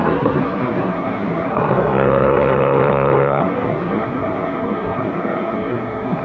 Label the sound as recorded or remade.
remade